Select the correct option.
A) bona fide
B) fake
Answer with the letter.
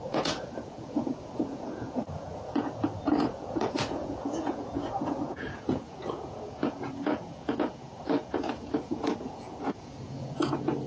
B